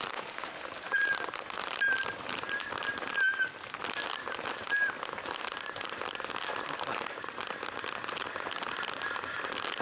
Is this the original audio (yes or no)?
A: yes